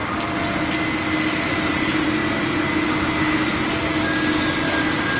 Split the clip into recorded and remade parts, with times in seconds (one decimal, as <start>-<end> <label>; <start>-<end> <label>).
0.0-5.2 recorded